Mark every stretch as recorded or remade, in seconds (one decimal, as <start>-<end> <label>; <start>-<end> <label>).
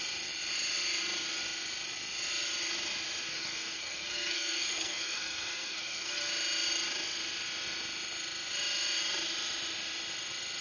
0.0-3.3 recorded; 3.3-6.3 remade; 6.3-10.6 recorded